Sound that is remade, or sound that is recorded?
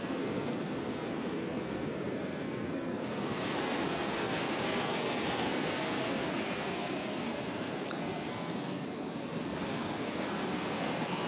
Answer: remade